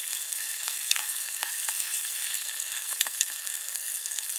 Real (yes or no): no